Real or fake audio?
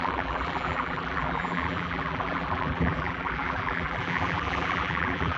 fake